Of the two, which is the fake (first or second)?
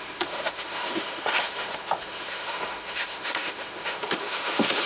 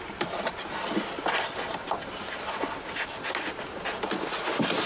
first